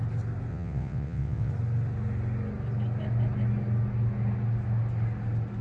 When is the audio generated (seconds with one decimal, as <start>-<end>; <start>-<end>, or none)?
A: 0.5-1.5